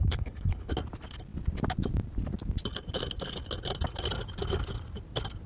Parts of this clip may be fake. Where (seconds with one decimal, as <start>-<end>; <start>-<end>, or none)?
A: 0.0-0.7